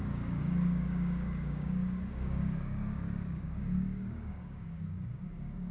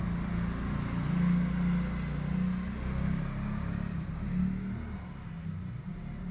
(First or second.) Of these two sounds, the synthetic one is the first